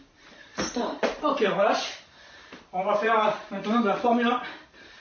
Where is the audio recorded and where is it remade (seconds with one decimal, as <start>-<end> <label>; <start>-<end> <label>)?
0.0-0.5 recorded; 0.5-3.5 remade; 3.5-5.0 recorded